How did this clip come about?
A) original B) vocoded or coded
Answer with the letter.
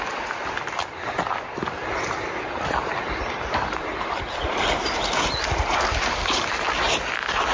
A